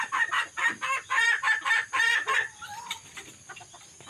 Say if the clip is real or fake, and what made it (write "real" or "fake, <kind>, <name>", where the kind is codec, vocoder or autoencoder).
real